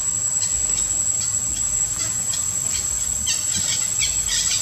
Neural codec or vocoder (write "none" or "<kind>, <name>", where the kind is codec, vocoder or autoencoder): none